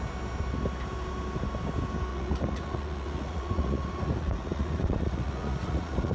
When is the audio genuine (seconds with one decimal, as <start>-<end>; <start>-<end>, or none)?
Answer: 0.0-2.1